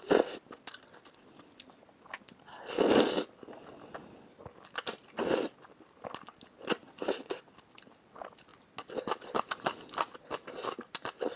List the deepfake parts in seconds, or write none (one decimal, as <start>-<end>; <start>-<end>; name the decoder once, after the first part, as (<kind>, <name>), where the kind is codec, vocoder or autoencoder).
none